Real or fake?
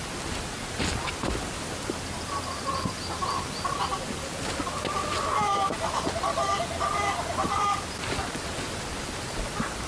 real